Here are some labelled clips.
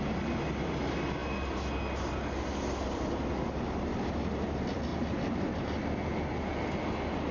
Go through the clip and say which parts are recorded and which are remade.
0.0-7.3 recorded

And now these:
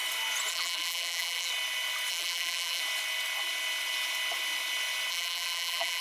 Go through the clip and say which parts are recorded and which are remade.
0.0-0.5 recorded; 0.5-1.5 remade; 1.5-2.1 recorded; 2.1-2.8 remade; 2.8-5.1 recorded; 5.1-6.0 remade

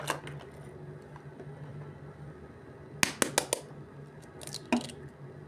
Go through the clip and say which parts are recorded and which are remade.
0.0-5.5 recorded

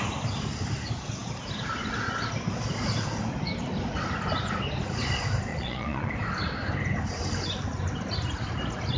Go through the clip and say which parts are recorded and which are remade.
0.0-5.5 recorded; 5.5-6.1 remade; 6.1-9.0 recorded

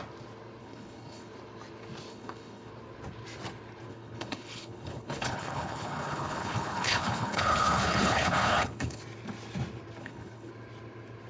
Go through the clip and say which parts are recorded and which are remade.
0.0-0.6 recorded; 0.6-1.3 remade; 1.3-2.1 recorded; 2.1-2.7 remade; 2.7-3.9 recorded; 3.9-9.0 remade; 9.0-10.0 recorded; 10.0-10.5 remade; 10.5-11.3 recorded

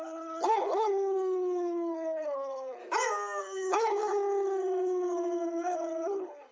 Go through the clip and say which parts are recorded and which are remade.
0.0-2.8 remade; 2.8-3.4 recorded; 3.4-6.5 remade

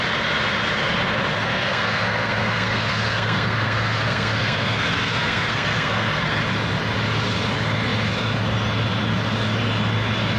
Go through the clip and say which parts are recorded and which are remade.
0.0-1.4 recorded; 1.4-6.4 remade; 6.4-10.4 recorded